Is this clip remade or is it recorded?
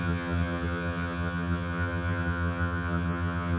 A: remade